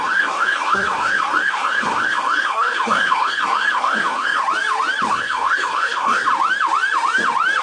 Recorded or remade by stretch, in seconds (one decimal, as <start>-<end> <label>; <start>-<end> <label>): 0.0-4.4 remade; 4.4-5.1 recorded; 5.1-6.3 remade; 6.3-7.6 recorded